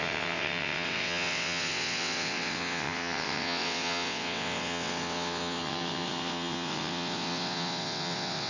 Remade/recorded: remade